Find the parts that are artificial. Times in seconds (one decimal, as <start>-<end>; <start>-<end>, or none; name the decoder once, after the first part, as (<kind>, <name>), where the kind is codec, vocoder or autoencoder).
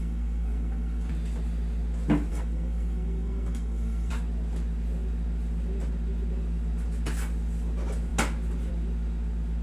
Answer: 0.0-1.1 (codec, SNAC); 2.3-4.1